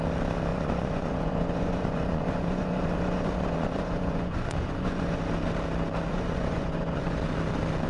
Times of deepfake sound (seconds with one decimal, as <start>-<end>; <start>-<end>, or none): 0.5-5.2; 6.1-7.2